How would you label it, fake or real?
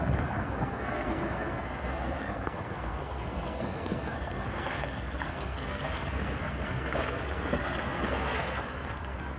fake